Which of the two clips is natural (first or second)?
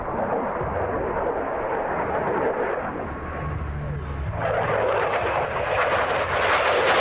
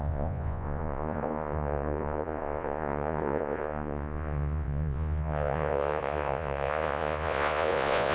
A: first